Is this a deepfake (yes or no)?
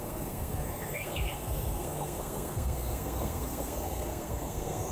yes